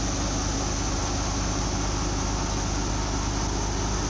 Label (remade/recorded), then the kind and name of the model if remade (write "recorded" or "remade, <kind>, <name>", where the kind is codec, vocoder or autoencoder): recorded